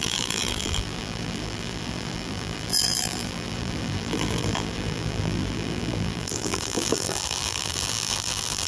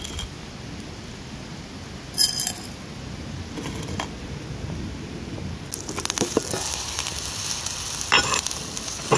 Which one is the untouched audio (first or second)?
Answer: second